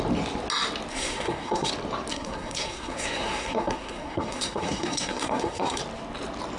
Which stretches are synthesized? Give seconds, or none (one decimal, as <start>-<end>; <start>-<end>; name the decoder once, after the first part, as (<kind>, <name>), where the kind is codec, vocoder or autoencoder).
0.9-1.7 (codec, SNAC); 2.1-5.8